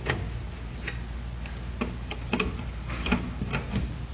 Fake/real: real